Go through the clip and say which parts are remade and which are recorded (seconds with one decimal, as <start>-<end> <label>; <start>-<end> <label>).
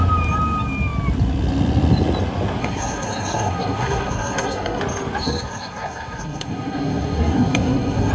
0.0-2.6 recorded; 2.6-4.8 remade; 4.8-5.2 recorded; 5.2-8.1 remade